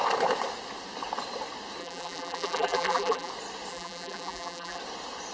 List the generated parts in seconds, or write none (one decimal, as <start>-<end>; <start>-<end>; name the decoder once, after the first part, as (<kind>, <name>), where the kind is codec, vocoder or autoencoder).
1.8-3.3 (vocoder, BigVGAN v2); 3.7-4.8